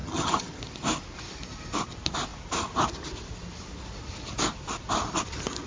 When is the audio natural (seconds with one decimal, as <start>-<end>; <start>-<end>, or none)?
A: 0.6-5.7